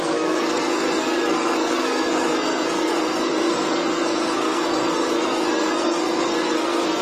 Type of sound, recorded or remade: remade